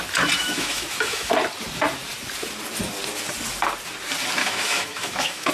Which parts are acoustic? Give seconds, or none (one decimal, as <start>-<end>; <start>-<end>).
0.0-0.4; 1.3-4.4